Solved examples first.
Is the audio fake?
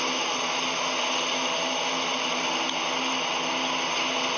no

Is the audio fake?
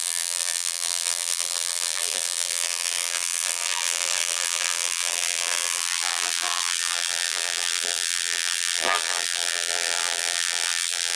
yes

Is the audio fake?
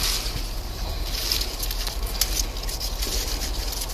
no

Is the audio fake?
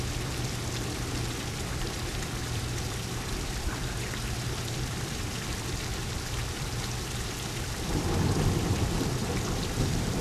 yes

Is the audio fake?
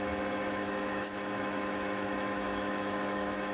yes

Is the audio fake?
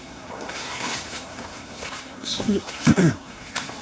yes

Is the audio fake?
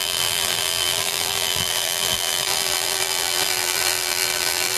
yes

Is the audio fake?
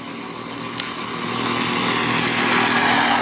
no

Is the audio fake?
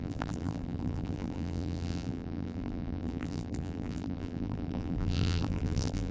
yes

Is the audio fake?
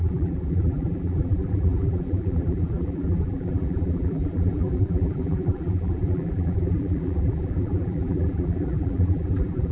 yes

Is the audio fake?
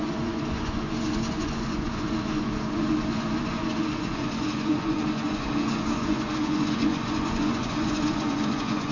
yes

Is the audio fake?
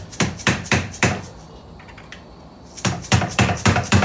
yes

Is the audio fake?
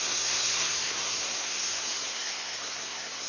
yes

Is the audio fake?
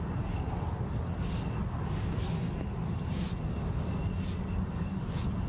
no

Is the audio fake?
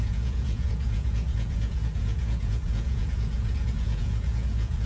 yes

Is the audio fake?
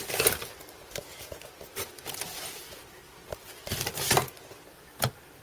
no